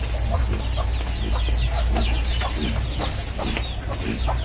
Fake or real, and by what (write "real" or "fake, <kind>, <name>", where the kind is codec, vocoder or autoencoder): real